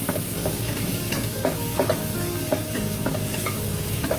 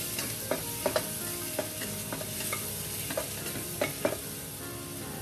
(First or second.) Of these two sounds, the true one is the second